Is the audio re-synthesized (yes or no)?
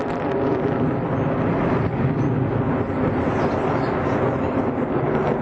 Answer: no